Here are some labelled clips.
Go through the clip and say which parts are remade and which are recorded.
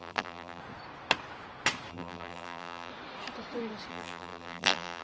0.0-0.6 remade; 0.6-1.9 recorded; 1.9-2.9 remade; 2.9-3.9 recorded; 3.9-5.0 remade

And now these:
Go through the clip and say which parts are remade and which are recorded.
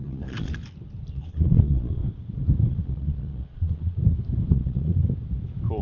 0.0-0.6 remade; 0.6-1.1 recorded; 1.1-2.0 remade; 2.0-2.7 recorded; 2.7-4.0 remade; 4.0-4.5 recorded; 4.5-5.0 remade; 5.0-5.8 recorded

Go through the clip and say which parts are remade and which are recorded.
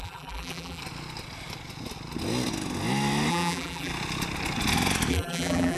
0.0-0.8 remade; 0.8-3.3 recorded; 3.3-3.9 remade; 3.9-5.1 recorded; 5.1-5.8 remade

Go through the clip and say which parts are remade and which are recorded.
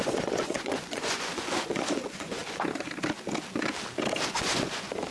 0.0-2.4 remade; 2.4-4.3 recorded; 4.3-5.1 remade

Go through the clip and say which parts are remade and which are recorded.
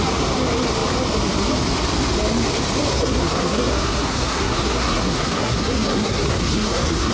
0.0-2.9 recorded; 2.9-7.1 remade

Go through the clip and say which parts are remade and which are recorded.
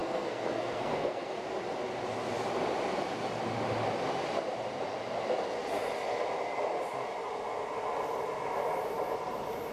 0.0-1.4 remade; 1.4-9.7 recorded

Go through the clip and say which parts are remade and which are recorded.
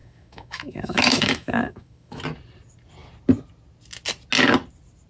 0.0-2.2 remade; 2.2-5.1 recorded